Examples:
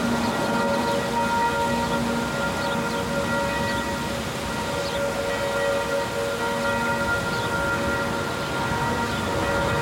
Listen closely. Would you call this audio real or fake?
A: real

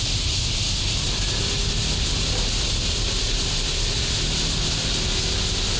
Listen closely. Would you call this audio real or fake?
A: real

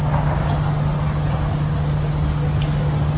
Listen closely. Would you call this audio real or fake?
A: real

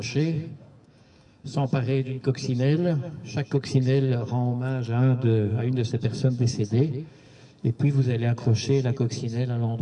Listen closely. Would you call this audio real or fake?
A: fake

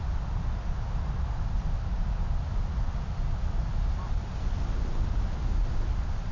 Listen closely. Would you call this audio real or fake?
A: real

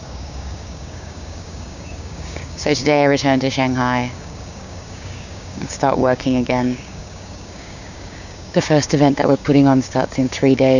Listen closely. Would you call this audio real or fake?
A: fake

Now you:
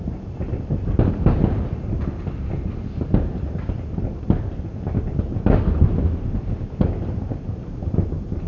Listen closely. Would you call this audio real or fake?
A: real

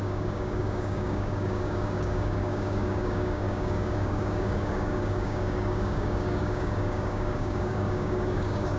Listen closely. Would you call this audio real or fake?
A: fake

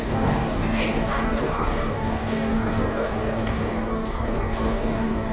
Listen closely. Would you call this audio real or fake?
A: fake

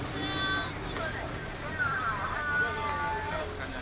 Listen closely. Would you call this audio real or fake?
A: real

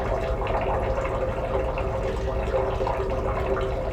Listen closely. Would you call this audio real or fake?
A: real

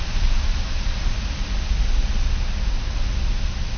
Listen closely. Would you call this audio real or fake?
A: real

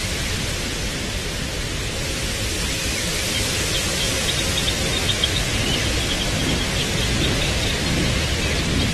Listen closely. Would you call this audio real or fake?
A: real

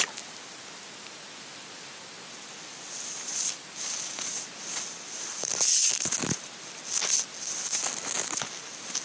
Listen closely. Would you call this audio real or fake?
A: real